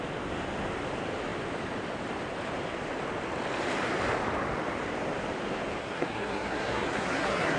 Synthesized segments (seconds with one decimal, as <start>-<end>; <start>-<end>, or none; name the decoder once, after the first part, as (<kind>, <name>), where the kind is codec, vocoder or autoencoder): 5.8-7.6 (codec, SNAC)